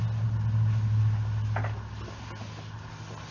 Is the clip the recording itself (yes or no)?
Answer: yes